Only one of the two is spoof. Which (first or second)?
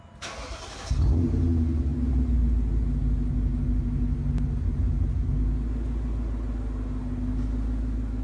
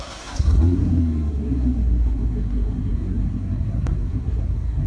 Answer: second